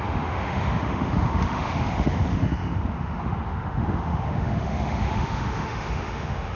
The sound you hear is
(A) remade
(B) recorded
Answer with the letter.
A